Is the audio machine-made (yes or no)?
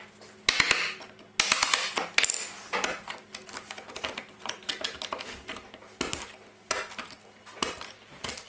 no